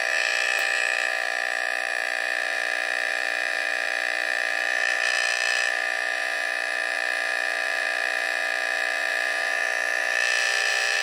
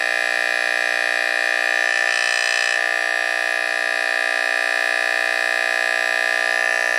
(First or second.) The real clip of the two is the second